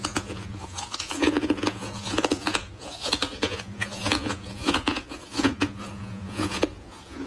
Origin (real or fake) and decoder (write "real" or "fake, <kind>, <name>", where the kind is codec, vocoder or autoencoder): fake, vocoder, Vocos